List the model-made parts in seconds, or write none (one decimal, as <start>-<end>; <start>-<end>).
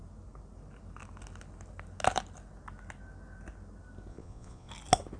4.1-4.7